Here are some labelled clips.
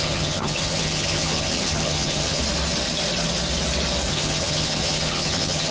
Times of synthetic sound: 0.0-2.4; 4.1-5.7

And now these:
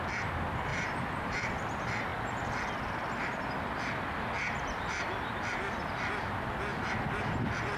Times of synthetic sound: 0.7-1.5

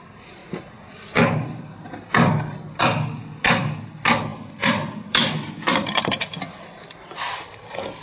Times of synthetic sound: 4.3-6.3